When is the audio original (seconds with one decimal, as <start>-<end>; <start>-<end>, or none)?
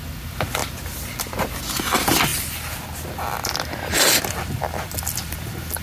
0.0-5.8